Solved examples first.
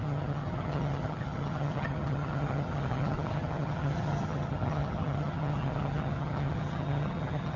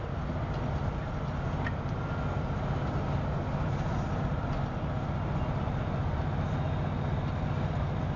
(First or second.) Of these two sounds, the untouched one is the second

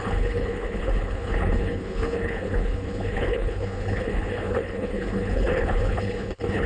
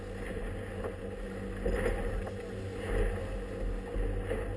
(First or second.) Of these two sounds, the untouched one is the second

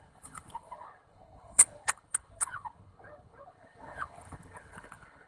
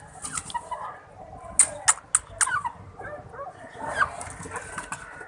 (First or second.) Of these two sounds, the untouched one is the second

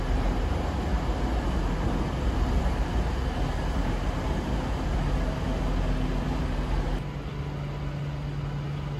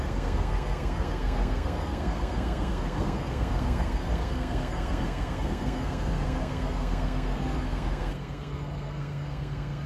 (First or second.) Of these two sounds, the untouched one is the first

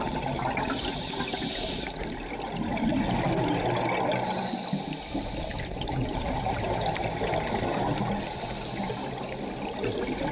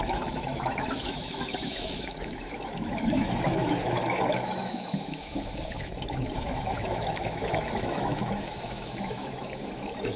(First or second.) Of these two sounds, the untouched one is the first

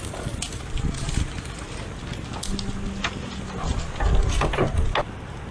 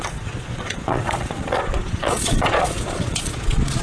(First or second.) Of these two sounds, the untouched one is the first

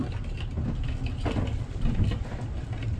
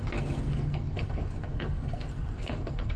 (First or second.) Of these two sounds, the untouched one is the first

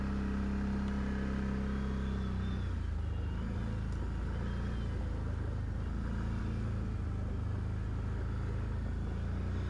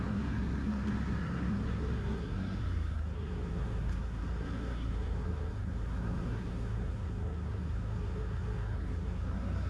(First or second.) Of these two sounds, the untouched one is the first